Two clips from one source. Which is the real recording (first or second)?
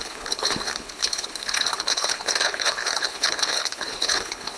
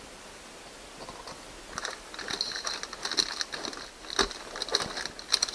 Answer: second